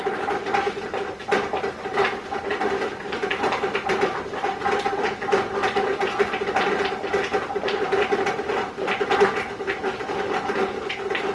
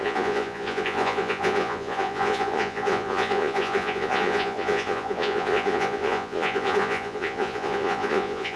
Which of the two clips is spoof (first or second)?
second